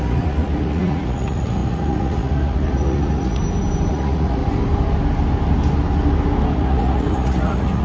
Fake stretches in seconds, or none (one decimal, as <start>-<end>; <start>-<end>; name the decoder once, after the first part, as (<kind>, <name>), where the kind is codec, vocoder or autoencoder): 0.0-3.4 (vocoder, Vocos); 3.9-4.4; 6.5-7.8